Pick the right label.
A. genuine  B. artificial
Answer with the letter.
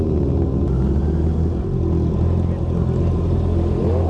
A